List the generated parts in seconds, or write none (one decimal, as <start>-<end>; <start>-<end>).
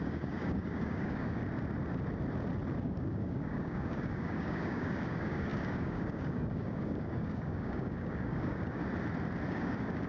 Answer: 0.0-1.4; 2.8-8.8; 9.5-10.1